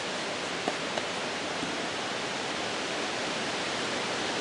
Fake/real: fake